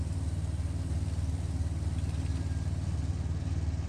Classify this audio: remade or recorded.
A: recorded